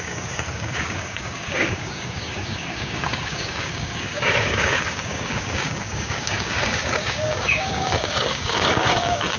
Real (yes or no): no